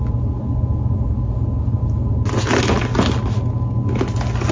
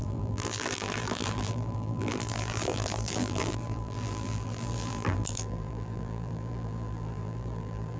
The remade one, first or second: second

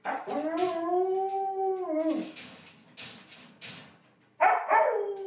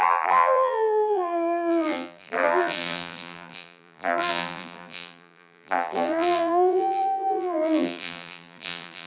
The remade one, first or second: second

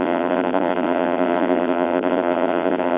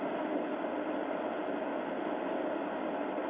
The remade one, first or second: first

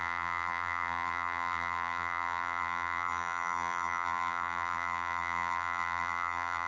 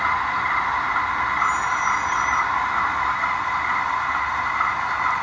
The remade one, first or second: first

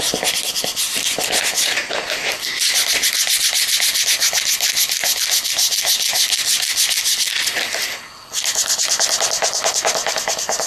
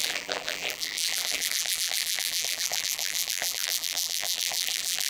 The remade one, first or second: second